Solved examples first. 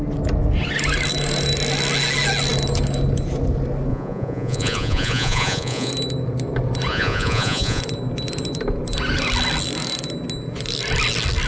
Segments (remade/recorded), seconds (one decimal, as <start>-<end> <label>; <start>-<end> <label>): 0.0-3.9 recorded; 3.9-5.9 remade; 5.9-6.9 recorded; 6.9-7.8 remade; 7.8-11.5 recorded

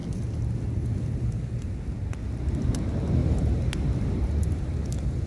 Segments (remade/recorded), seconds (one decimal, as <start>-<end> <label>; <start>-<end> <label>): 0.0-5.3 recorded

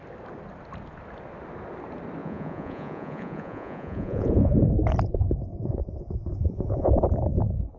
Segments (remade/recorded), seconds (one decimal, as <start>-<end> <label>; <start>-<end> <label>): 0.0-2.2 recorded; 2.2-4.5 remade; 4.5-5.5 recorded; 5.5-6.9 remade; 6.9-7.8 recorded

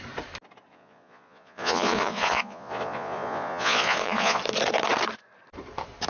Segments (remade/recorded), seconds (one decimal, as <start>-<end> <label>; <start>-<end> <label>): 0.0-0.7 recorded; 0.7-4.4 remade; 4.4-6.1 recorded

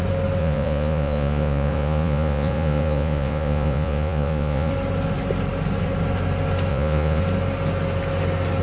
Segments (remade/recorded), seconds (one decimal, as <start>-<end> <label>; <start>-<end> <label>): 0.0-0.4 recorded; 0.4-4.7 remade; 4.7-6.7 recorded; 6.7-7.2 remade; 7.2-8.6 recorded

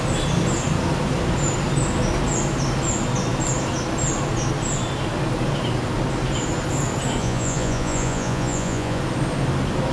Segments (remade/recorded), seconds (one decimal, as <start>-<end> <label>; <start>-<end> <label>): 0.0-7.2 recorded; 7.2-9.0 remade; 9.0-9.9 recorded

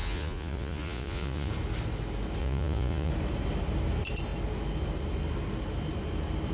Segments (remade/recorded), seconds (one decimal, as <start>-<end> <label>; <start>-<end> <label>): 0.0-1.5 remade; 1.5-2.4 recorded; 2.4-3.1 remade; 3.1-6.5 recorded